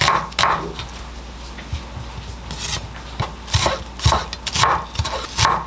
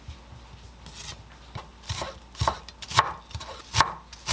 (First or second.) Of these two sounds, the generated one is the second